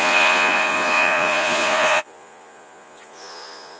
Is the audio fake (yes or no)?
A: yes